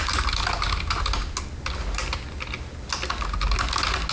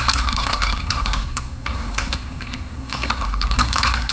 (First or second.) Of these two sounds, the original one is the first